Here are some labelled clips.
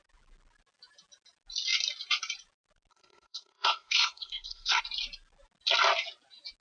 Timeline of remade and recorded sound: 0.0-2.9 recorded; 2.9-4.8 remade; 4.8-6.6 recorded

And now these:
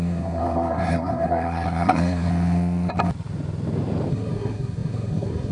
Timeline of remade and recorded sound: 0.0-2.3 remade; 2.3-4.1 recorded; 4.1-5.5 remade

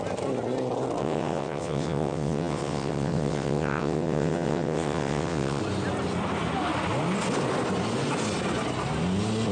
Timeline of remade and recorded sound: 0.0-1.0 recorded; 1.0-5.6 remade; 5.6-9.5 recorded

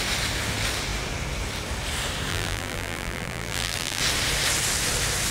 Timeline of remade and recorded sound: 0.0-2.3 recorded; 2.3-4.0 remade; 4.0-5.3 recorded

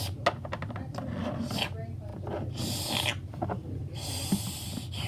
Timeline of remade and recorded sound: 0.0-5.1 recorded

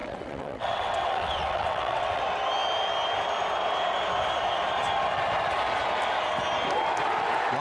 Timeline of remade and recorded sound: 0.0-2.2 remade; 2.2-7.6 recorded

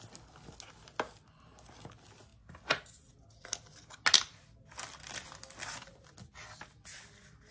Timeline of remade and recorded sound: 0.0-7.5 recorded